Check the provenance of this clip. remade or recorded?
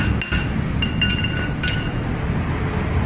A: recorded